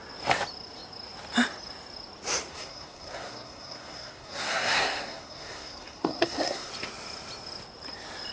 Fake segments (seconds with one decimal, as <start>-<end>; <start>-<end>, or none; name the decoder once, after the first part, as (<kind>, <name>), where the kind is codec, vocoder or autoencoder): 2.5-6.7 (codec, SNAC)